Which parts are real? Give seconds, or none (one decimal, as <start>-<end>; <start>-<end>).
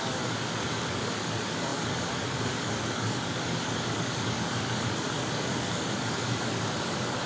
none